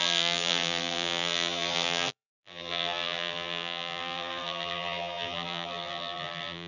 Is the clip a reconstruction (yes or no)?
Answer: yes